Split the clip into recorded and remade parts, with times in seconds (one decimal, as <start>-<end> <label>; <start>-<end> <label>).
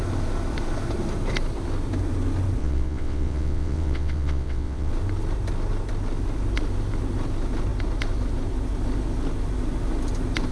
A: 0.0-2.6 recorded; 2.6-4.9 remade; 4.9-10.5 recorded